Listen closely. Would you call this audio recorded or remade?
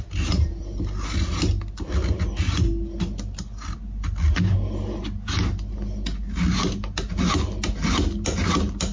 recorded